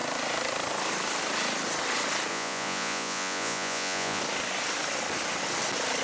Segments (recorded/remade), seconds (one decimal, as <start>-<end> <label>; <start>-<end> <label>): 0.0-2.3 recorded; 2.3-4.2 remade; 4.2-6.0 recorded